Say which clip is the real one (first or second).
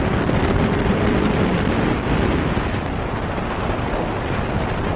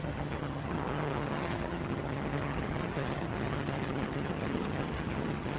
first